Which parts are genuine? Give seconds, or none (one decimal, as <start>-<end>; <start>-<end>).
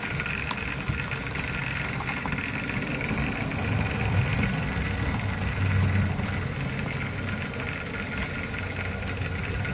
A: 0.0-9.7